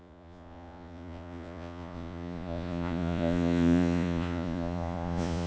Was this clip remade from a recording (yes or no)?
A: yes